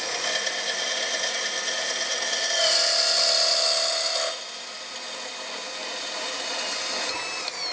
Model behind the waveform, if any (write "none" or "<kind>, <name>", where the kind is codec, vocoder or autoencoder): none